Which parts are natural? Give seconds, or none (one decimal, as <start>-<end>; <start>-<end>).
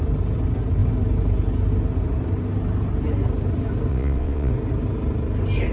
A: 0.0-3.9; 4.5-5.7